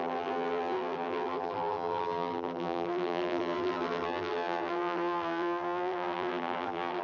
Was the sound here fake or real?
fake